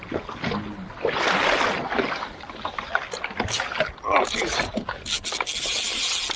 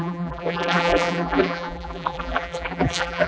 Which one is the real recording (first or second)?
first